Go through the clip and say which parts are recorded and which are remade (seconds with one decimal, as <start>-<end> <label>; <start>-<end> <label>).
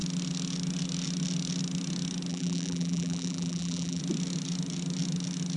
0.0-2.3 recorded; 2.3-4.0 remade; 4.0-5.6 recorded